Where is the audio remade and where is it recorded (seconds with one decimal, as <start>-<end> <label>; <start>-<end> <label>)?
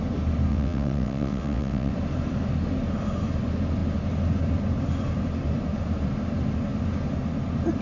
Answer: 0.0-0.5 recorded; 0.5-1.9 remade; 1.9-7.8 recorded